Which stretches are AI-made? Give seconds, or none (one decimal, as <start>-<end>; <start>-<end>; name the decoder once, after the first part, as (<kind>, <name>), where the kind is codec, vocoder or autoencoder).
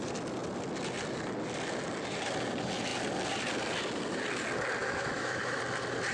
4.8-5.6 (autoencoder, DAC-VAE)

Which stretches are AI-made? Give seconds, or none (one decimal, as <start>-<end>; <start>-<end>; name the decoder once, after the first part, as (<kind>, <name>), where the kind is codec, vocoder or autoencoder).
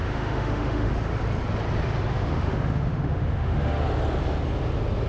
0.0-0.9 (autoencoder, DAC-VAE); 2.1-3.8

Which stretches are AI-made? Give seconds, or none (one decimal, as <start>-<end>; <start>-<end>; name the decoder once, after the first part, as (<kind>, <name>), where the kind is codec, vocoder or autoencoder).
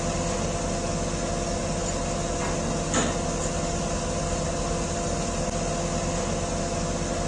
none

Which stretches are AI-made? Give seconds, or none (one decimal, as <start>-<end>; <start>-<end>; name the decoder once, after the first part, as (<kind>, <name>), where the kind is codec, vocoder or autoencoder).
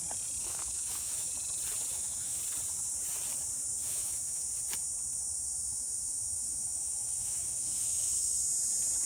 0.4-1.3 (autoencoder, DAC-VAE); 1.9-2.4; 3.8-4.4; 5.7-8.4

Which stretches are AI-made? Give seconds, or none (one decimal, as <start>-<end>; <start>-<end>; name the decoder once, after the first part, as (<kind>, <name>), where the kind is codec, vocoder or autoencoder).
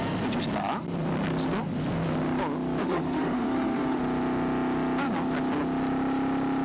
2.8-4.0 (autoencoder, DAC-VAE)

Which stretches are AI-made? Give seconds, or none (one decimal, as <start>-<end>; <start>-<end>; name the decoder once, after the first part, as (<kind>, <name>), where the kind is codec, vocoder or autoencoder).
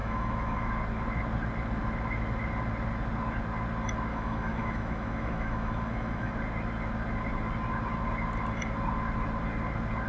0.0-0.7 (autoencoder, DAC-VAE); 4.1-6.3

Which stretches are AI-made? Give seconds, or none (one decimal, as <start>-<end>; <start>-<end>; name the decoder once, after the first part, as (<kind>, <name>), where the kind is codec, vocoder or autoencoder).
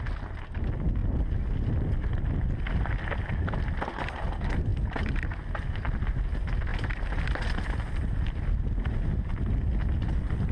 none